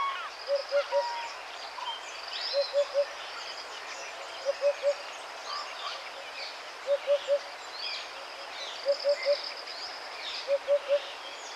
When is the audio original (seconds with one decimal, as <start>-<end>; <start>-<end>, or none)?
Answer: 0.0-9.7; 10.4-11.6